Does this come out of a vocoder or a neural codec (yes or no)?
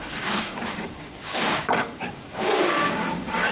yes